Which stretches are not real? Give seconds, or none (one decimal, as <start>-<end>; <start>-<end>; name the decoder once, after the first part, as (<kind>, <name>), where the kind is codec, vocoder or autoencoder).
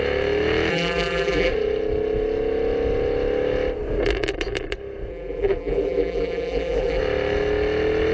0.7-1.5 (vocoder, BigVGAN v2); 5.1-7.0